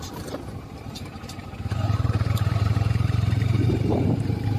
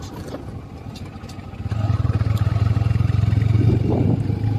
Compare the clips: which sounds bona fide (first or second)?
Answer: second